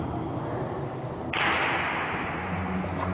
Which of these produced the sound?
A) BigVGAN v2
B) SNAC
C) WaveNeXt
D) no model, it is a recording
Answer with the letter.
D